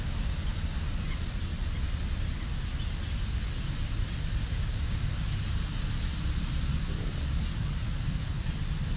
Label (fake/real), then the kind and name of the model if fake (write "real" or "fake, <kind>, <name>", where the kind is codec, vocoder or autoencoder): real